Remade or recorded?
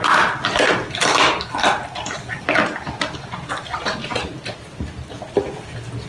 recorded